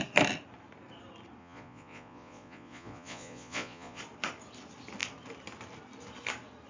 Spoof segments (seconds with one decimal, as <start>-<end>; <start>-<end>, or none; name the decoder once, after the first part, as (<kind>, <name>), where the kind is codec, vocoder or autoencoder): 1.4-4.0 (vocoder, Vocos)